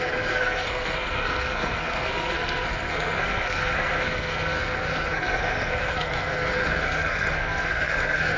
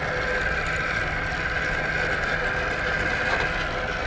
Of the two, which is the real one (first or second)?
second